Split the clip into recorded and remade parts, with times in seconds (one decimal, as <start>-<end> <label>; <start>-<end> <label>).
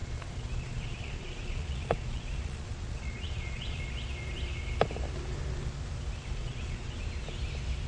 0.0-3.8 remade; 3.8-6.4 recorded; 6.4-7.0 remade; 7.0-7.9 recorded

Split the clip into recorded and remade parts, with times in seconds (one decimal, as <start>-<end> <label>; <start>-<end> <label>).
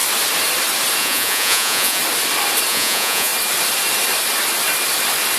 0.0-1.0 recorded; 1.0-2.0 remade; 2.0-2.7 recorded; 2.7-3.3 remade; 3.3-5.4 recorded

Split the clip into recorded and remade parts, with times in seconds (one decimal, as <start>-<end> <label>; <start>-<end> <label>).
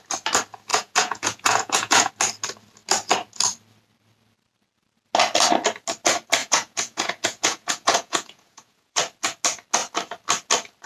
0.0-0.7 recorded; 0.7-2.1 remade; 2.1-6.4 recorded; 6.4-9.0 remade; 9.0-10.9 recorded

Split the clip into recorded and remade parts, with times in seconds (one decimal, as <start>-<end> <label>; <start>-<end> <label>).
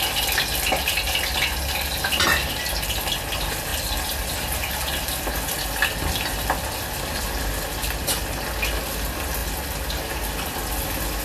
0.0-11.2 recorded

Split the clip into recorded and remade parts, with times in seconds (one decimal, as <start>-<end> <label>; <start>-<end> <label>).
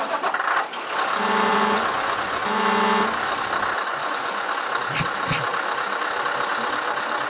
0.0-1.5 recorded; 1.5-2.6 remade; 2.6-3.9 recorded; 3.9-4.5 remade; 4.5-7.3 recorded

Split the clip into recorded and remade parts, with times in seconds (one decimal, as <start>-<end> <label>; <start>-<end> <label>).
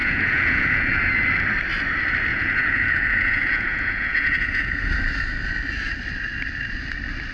0.0-1.0 remade; 1.0-2.3 recorded; 2.3-4.9 remade; 4.9-7.3 recorded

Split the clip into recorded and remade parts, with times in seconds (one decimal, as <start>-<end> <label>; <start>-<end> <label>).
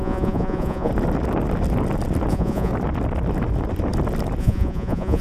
0.0-0.9 remade; 0.9-2.3 recorded; 2.3-2.7 remade; 2.7-4.4 recorded; 4.4-5.2 remade